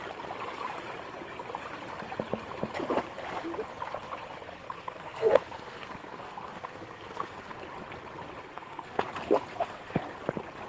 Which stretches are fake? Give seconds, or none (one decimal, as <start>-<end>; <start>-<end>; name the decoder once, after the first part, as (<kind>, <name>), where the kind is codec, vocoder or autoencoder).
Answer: 4.5-7.6 (codec, SNAC); 8.4-9.0; 9.5-10.0